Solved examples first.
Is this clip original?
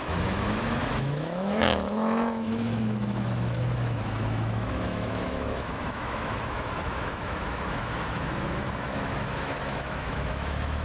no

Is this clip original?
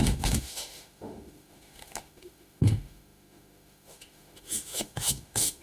no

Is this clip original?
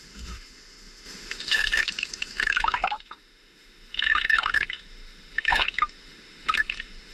no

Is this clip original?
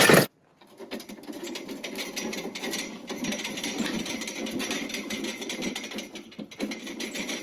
yes